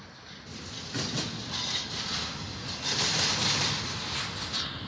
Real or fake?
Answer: real